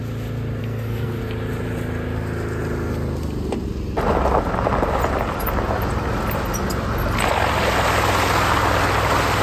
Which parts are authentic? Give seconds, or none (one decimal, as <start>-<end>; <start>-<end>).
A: 0.0-0.6; 1.2-9.4